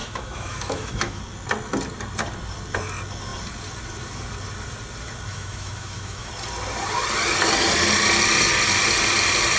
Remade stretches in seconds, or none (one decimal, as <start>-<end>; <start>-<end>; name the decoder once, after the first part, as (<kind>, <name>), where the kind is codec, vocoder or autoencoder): 0.0-1.2 (autoencoder, DAC-VAE); 5.3-6.3